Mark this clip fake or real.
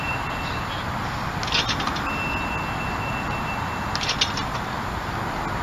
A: real